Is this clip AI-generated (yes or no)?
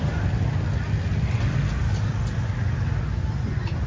no